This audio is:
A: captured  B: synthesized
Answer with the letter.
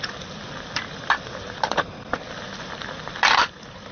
A